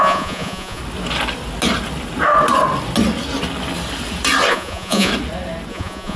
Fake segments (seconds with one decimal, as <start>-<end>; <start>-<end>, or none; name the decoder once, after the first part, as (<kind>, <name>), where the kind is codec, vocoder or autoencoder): 0.0-0.8 (vocoder, Vocos); 4.5-5.1; 5.7-6.2

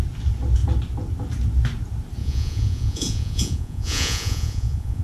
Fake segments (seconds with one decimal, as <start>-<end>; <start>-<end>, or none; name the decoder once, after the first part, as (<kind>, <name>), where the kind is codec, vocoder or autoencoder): 2.2-5.0 (vocoder, Vocos)

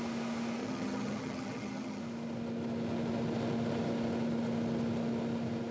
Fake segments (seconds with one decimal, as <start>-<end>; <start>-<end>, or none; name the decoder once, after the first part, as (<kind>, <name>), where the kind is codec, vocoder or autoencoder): 0.6-2.0 (vocoder, HiFi-GAN)

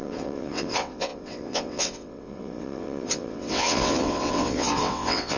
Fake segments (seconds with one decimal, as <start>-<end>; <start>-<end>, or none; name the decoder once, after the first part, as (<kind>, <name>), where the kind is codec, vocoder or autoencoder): 0.0-5.4 (vocoder, WaveNeXt)

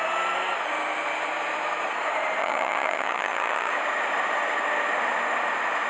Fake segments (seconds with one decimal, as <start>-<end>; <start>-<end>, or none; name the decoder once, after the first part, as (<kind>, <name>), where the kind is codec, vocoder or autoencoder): 2.4-3.7 (vocoder, HiFi-GAN)

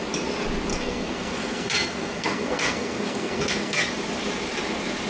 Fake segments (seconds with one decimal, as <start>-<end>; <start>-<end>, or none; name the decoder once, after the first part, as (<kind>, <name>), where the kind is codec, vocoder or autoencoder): 0.7-3.8 (codec, SNAC)

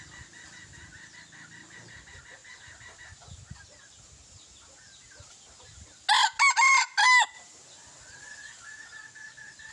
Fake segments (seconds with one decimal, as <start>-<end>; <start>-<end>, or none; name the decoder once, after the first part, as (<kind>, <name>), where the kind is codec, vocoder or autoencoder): none

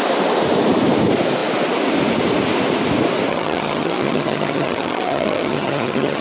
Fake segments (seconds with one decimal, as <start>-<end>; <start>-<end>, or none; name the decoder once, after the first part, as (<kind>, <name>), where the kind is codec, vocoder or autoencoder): 3.3-6.2 (vocoder, HiFi-GAN)